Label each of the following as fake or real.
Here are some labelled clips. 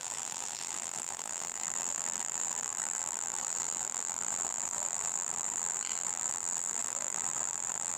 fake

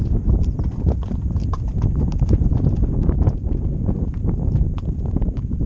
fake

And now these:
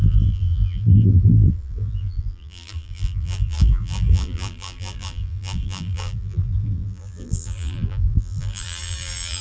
fake